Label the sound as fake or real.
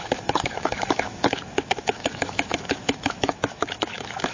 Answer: fake